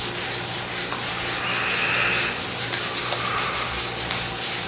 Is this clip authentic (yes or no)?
yes